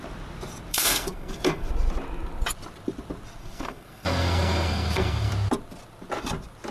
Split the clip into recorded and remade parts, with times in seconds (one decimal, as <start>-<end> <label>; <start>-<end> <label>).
0.0-0.7 recorded; 0.7-1.7 remade; 1.7-3.4 recorded; 3.4-5.3 remade; 5.3-6.7 recorded